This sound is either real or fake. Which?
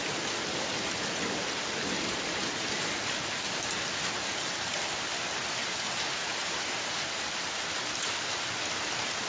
real